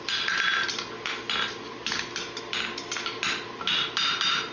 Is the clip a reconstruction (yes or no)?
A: no